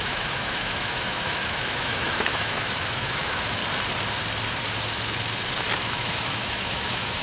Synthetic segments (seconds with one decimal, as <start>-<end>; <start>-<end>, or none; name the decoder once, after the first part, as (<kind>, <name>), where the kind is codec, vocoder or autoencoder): 0.0-3.6 (autoencoder, DAC-VAE); 5.8-7.2